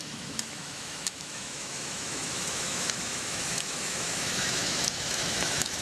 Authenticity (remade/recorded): remade